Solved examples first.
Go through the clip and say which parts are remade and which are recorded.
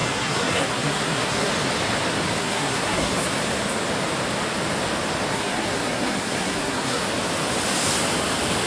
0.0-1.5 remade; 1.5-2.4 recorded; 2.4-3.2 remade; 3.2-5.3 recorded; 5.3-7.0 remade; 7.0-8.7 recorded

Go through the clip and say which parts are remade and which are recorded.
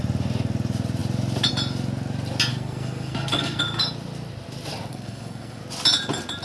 0.0-2.5 recorded; 2.5-3.6 remade; 3.6-4.9 recorded; 4.9-5.6 remade; 5.6-6.4 recorded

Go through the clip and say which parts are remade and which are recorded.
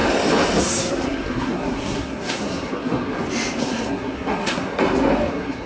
0.0-0.6 recorded; 0.6-3.1 remade; 3.1-3.6 recorded; 3.6-4.8 remade; 4.8-5.3 recorded; 5.3-5.7 remade